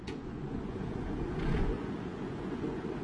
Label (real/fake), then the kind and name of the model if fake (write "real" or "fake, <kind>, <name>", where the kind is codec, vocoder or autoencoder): fake, vocoder, Vocos